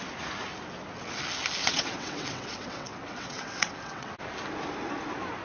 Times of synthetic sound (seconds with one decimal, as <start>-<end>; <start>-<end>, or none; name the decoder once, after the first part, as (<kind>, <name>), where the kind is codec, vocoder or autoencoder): 1.6-4.1 (vocoder, WaveNeXt)